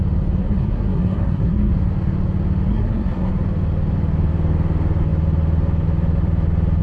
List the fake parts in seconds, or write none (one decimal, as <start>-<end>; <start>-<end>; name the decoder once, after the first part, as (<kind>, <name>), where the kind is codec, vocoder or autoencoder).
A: 0.4-1.7 (codec, SNAC); 2.7-3.3